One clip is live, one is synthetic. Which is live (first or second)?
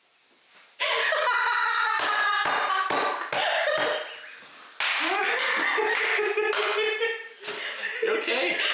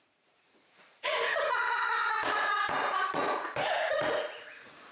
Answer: first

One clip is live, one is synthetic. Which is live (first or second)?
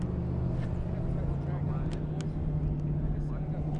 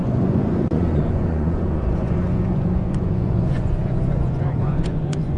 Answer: first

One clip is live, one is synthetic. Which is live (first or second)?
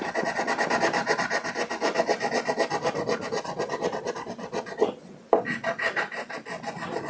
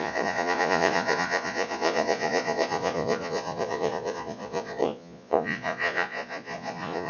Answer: first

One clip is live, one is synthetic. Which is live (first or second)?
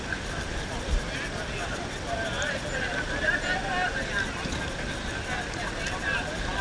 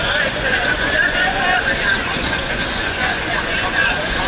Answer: first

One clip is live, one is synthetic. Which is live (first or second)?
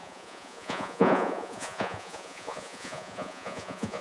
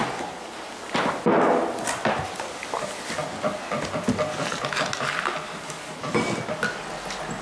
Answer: second